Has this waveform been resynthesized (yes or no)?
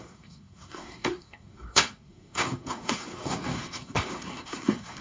yes